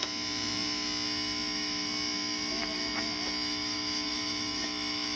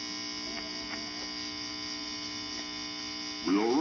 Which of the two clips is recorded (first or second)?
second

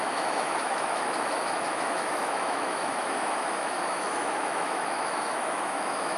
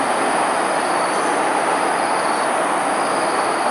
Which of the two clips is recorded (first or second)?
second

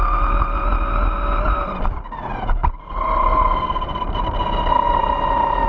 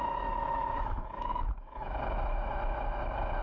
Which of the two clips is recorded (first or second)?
first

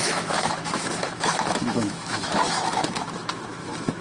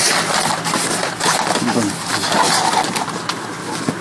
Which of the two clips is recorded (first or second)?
second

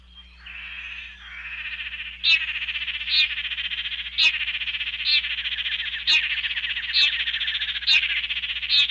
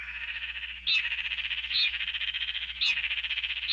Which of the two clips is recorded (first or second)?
first